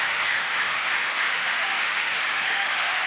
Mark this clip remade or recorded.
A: remade